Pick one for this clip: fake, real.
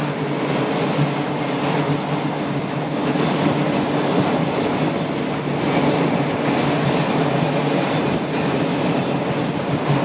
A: real